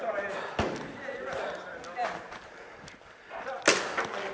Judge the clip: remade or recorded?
recorded